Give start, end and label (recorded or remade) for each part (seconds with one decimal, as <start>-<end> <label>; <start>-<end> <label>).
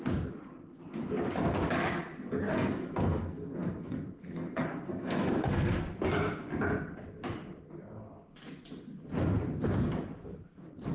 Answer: 0.0-2.4 recorded; 2.4-5.8 remade; 5.8-10.9 recorded